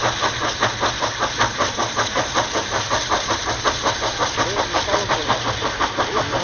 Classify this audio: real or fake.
real